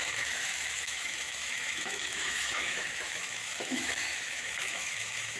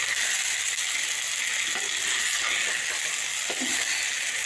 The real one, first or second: second